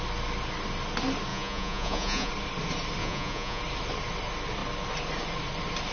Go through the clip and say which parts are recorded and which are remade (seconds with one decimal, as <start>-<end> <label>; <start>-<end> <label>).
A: 0.0-1.3 recorded; 1.3-2.3 remade; 2.3-3.0 recorded; 3.0-3.6 remade; 3.6-5.9 recorded